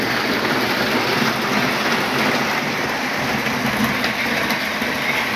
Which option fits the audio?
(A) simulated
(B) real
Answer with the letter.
B